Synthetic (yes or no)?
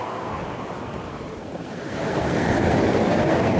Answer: yes